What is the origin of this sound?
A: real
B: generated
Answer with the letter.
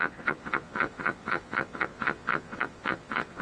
B